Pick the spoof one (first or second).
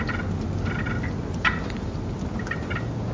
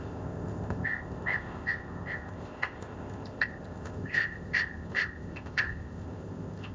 second